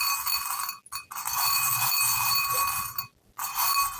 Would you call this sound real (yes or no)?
yes